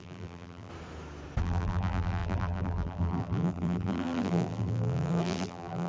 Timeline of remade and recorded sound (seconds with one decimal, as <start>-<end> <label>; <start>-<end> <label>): 0.0-0.7 remade; 0.7-1.4 recorded; 1.4-5.9 remade